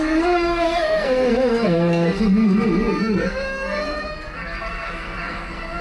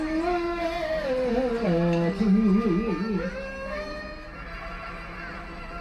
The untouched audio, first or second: second